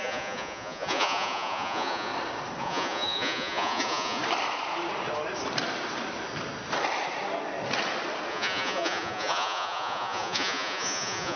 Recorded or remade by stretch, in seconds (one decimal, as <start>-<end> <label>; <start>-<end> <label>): 0.0-2.1 remade; 2.1-2.6 recorded; 2.6-4.2 remade; 4.2-8.3 recorded; 8.3-11.4 remade